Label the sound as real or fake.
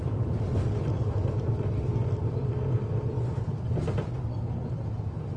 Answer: real